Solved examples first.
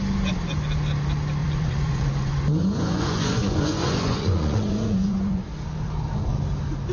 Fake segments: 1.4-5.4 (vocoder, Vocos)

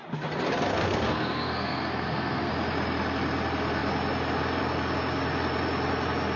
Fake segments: 0.7-2.5 (codec, SNAC)

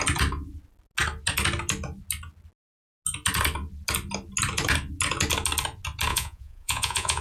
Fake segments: 6.1-7.2 (vocoder, Vocos)

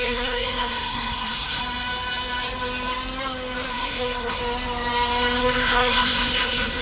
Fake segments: 0.0-1.6 (codec, SNAC); 3.7-4.4; 5.4-6.8

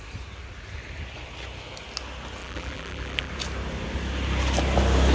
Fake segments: 2.4-3.3 (vocoder, BigVGAN v2)